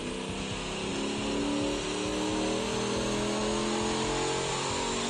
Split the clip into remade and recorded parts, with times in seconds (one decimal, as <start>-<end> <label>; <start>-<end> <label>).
0.0-5.1 recorded